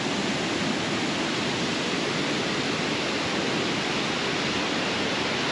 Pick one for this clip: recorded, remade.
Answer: recorded